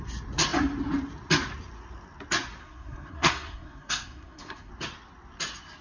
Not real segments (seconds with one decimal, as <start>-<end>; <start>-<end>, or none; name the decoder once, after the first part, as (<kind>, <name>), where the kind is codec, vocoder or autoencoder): 2.6-4.7 (codec, SNAC)

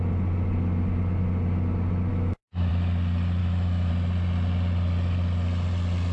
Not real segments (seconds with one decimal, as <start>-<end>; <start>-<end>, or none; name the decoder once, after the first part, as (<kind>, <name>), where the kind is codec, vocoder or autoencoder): 2.1-2.7 (autoencoder, DAC-VAE); 3.4-3.9

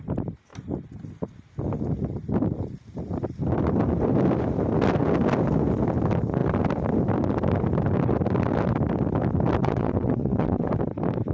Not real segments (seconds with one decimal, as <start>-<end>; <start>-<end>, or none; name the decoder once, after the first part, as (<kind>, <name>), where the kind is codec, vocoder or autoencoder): 9.6-10.7 (vocoder, WaveNeXt)

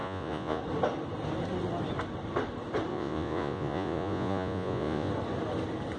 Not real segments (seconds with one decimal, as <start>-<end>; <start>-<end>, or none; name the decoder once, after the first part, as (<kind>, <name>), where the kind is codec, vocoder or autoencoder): 0.0-0.6 (vocoder, Vocos); 2.9-5.1

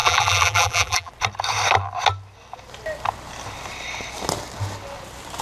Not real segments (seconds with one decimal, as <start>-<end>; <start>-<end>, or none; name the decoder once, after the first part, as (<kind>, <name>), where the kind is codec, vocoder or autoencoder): 0.0-1.1 (vocoder, BigVGAN v2)

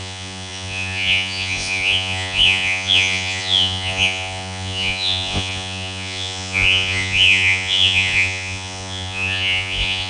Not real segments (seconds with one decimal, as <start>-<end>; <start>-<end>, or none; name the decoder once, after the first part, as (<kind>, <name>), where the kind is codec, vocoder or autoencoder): 0.0-10.1 (vocoder, Vocos)

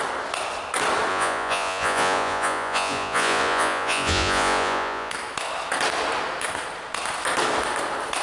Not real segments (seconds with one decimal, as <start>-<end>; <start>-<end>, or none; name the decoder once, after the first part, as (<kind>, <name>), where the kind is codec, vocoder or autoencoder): 1.1-5.1 (vocoder, Vocos)

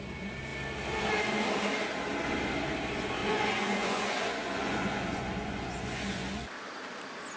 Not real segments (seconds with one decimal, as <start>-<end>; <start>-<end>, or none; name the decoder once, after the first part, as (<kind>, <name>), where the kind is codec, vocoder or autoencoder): 3.2-6.3 (vocoder, Vocos)